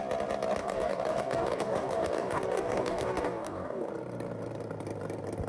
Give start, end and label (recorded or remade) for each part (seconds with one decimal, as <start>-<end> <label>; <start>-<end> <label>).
0.0-0.6 recorded; 0.6-3.9 remade; 3.9-5.5 recorded